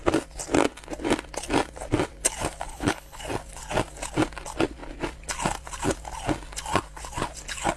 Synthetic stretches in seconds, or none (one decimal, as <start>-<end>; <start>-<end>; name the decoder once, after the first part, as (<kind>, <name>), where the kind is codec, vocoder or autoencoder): 2.7-3.2 (codec, HILCodec)